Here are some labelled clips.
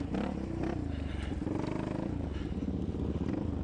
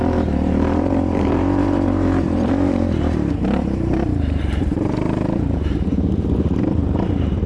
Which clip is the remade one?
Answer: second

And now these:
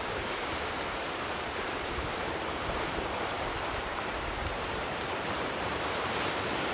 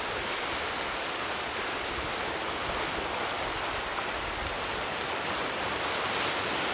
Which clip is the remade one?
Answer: first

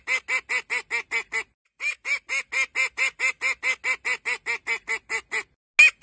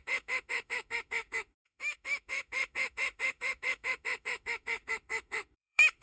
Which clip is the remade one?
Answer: second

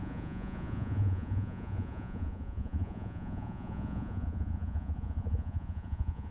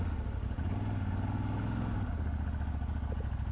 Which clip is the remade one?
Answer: first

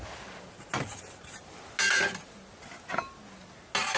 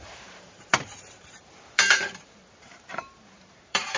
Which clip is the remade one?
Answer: second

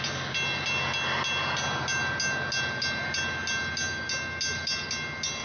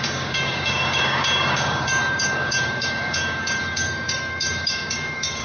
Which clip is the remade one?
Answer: second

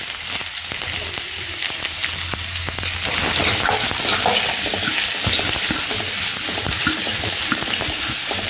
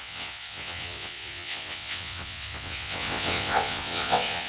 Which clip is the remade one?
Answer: second